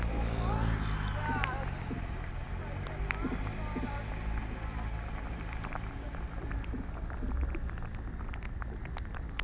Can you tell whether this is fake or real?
real